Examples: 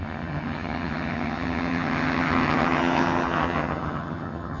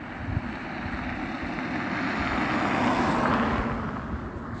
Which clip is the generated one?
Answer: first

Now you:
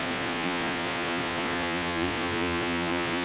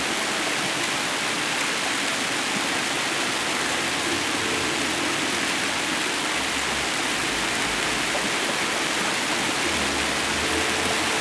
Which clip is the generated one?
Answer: first